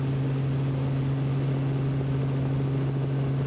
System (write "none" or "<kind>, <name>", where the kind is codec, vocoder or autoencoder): none